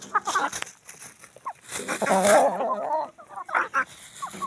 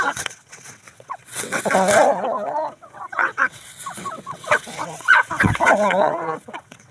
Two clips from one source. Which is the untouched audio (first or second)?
first